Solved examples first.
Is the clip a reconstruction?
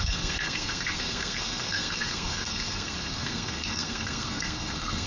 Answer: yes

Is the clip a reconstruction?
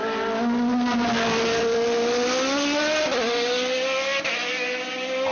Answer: no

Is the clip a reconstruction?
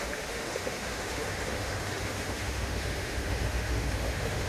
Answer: yes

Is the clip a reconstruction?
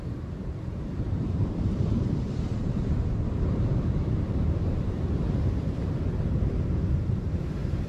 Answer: yes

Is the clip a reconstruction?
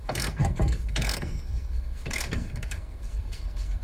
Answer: yes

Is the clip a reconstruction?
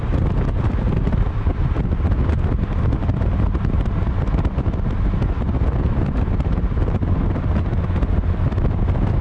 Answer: no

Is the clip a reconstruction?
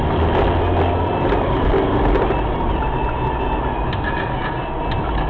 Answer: no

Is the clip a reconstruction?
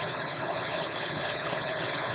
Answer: yes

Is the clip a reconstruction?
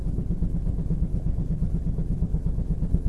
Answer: yes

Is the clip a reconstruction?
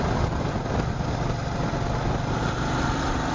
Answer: no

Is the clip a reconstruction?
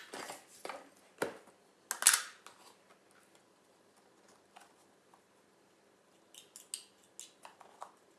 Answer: no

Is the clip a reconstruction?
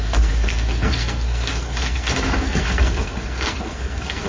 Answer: yes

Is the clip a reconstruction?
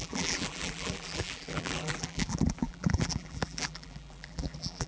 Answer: yes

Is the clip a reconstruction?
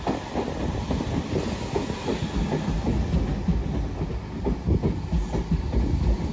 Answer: no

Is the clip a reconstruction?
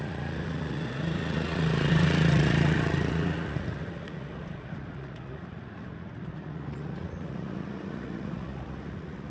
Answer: yes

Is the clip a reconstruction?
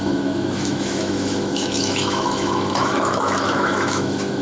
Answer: yes